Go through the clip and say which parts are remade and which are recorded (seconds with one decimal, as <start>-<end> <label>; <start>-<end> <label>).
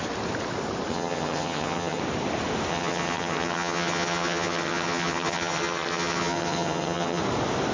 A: 0.0-0.9 recorded; 0.9-2.0 remade; 2.0-2.7 recorded; 2.7-7.2 remade; 7.2-7.7 recorded